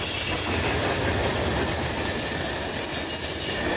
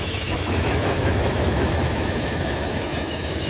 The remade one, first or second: second